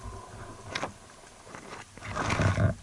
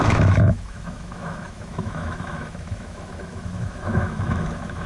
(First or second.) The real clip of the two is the first